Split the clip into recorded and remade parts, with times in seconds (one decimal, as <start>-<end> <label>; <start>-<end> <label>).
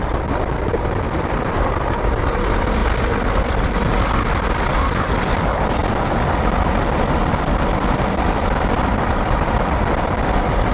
0.0-2.8 remade; 2.8-3.4 recorded; 3.4-5.8 remade; 5.8-7.2 recorded; 7.2-10.7 remade